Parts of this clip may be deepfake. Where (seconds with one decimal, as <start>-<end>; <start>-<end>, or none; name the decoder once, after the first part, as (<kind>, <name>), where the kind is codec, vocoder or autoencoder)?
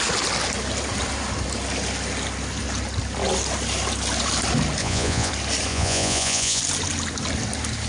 4.8-5.3 (vocoder, Vocos); 5.7-6.6